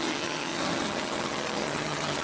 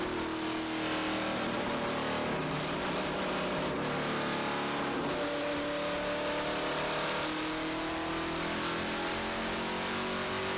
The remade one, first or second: first